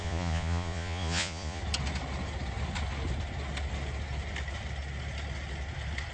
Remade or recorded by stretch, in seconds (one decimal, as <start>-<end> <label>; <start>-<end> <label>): 0.0-1.6 remade; 1.6-6.1 recorded